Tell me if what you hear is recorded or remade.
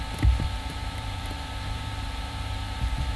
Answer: remade